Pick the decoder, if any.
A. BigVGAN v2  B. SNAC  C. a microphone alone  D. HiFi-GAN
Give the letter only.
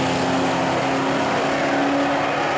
C